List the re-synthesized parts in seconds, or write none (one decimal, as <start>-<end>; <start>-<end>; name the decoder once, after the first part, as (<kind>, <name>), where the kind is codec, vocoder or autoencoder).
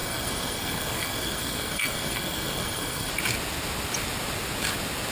0.0-3.1 (codec, SNAC)